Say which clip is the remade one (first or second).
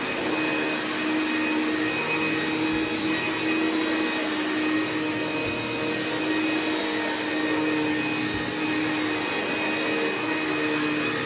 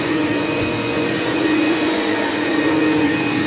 second